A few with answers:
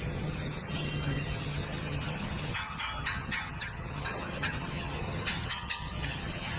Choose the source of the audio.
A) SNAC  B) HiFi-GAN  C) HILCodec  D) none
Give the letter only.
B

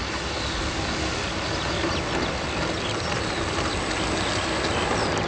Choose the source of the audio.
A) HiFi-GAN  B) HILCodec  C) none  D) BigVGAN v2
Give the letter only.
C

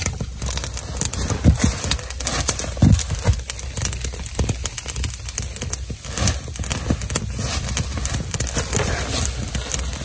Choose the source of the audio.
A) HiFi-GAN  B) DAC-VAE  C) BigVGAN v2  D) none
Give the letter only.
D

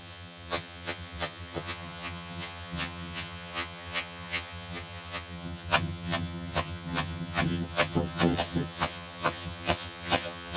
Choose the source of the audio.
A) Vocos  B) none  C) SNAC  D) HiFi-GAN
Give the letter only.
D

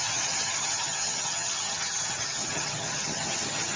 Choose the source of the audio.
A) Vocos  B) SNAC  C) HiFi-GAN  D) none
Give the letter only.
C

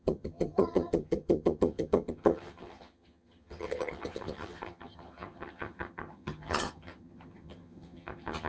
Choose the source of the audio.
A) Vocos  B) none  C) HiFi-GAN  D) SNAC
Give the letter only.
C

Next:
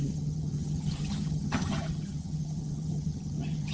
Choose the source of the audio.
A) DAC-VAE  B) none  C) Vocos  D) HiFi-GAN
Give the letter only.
D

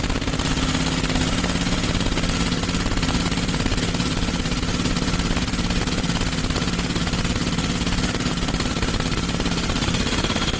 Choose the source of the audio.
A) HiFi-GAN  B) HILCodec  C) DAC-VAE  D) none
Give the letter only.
D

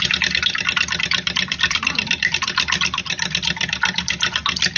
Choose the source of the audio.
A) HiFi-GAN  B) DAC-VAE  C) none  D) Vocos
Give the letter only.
C